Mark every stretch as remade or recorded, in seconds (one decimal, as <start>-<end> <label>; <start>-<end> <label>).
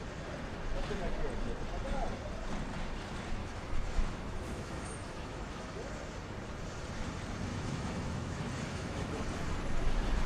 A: 0.0-3.4 recorded; 3.4-5.9 remade; 5.9-7.5 recorded; 7.5-9.2 remade; 9.2-10.3 recorded